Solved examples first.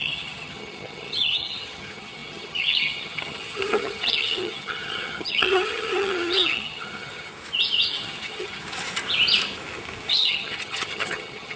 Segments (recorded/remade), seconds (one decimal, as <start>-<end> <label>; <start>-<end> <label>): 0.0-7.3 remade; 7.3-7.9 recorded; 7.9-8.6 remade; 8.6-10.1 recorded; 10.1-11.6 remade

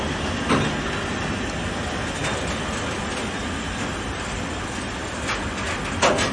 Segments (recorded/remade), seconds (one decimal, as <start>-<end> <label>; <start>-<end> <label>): 0.0-6.3 recorded

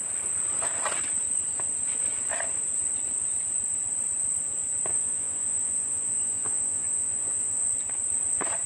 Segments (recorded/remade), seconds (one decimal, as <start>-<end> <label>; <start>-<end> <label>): 0.0-4.9 recorded; 4.9-7.7 remade; 7.7-8.7 recorded